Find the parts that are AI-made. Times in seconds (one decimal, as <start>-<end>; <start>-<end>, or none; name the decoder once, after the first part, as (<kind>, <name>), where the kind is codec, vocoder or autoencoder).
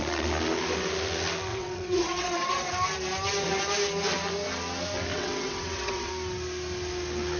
1.5-2.7 (vocoder, WaveNeXt); 5.1-6.1